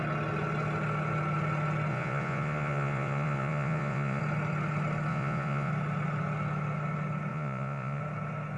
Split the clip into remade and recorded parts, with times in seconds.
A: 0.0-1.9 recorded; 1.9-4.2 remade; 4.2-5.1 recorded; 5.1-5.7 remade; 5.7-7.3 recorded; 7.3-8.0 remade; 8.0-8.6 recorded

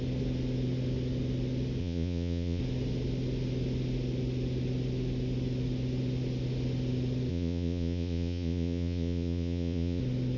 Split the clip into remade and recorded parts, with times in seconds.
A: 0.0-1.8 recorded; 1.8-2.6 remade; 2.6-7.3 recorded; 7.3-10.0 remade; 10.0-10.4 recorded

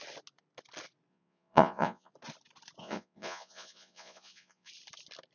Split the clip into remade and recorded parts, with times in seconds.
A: 0.0-1.1 recorded; 1.1-2.1 remade; 2.1-2.8 recorded; 2.8-4.7 remade; 4.7-5.3 recorded

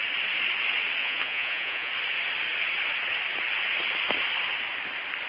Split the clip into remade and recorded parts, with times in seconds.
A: 0.0-1.0 recorded; 1.0-1.9 remade; 1.9-5.3 recorded

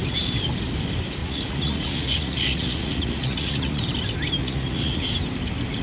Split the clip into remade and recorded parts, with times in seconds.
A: 0.0-1.2 recorded; 1.2-3.8 remade; 3.8-4.4 recorded; 4.4-5.0 remade; 5.0-5.8 recorded

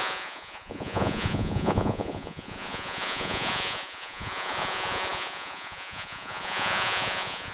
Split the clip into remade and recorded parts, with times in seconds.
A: 0.0-7.5 remade

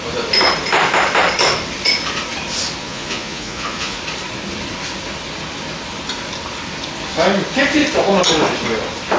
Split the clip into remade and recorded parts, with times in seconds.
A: 0.0-2.8 recorded; 2.8-4.0 remade; 4.0-9.2 recorded